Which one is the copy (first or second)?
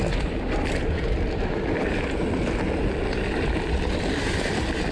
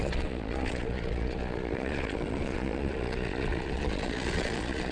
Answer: second